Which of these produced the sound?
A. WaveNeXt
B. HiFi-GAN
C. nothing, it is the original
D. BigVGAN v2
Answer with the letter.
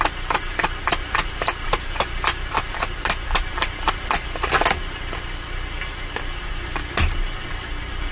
C